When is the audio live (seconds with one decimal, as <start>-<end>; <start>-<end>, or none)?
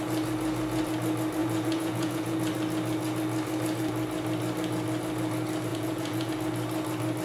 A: 0.0-1.4; 2.4-5.7; 6.3-7.2